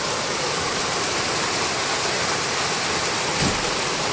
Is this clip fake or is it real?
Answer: real